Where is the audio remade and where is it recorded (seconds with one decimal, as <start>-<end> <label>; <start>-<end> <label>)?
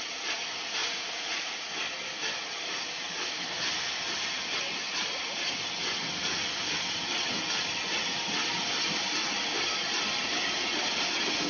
0.0-0.8 recorded; 0.8-1.7 remade; 1.7-11.5 recorded